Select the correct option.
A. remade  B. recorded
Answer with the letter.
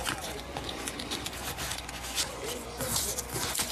A